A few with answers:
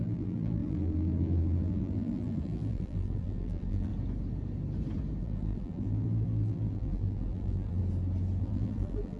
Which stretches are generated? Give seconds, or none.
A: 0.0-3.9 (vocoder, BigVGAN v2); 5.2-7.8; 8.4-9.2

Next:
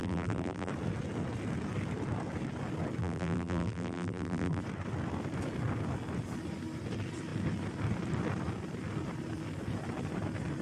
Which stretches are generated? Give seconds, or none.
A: 0.0-0.7 (vocoder, BigVGAN v2); 3.0-4.6